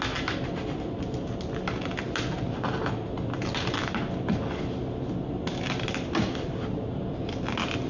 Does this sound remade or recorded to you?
recorded